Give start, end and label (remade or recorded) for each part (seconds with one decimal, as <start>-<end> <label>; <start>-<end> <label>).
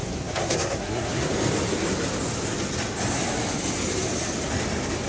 0.0-1.3 remade; 1.3-5.1 recorded